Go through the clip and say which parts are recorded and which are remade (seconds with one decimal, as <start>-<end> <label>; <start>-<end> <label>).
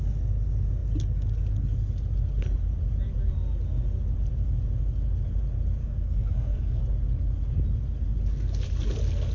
0.0-5.8 recorded; 5.8-6.8 remade; 6.8-9.3 recorded